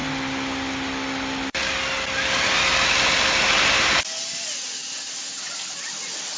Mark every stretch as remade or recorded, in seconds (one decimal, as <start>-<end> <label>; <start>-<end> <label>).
0.0-6.4 recorded